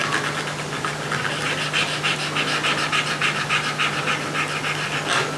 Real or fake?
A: real